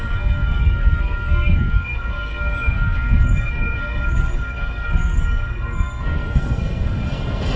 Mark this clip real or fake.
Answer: fake